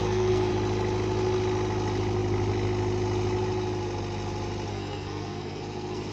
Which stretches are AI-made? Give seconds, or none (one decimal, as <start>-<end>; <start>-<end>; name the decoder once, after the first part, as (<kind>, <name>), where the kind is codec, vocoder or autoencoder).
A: 0.0-0.5 (codec, SNAC); 4.7-6.1